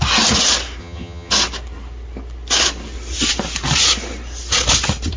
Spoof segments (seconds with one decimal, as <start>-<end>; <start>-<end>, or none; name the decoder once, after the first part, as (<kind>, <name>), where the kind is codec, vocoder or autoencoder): 0.8-1.3 (vocoder, HiFi-GAN)